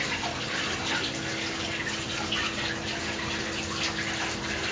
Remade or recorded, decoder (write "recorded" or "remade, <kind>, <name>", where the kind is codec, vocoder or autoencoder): recorded